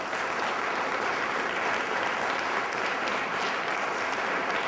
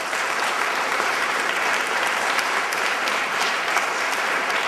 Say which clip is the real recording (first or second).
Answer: first